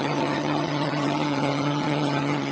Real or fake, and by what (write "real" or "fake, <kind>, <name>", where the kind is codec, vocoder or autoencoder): fake, vocoder, HiFi-GAN